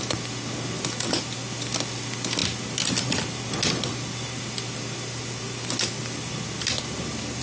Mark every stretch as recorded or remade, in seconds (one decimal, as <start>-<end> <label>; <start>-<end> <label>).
0.0-7.4 recorded